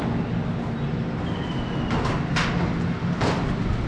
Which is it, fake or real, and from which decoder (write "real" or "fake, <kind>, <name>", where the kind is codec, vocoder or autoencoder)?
real